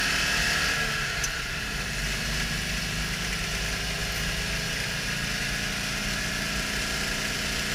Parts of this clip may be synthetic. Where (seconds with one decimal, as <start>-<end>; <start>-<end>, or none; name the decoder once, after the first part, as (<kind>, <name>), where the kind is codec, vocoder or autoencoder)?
none